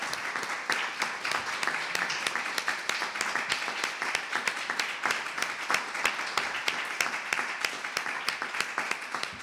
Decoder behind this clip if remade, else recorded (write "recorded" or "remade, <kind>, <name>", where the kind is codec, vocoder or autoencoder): recorded